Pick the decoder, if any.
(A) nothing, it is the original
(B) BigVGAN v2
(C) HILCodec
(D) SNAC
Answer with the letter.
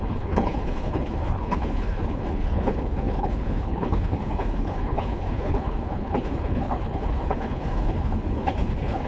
C